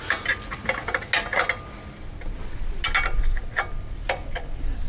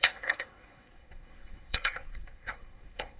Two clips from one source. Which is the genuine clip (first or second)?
first